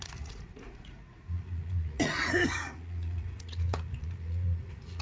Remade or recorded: remade